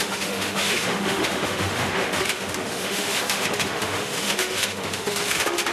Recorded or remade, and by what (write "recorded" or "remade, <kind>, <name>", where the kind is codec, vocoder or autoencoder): remade, autoencoder, DAC-VAE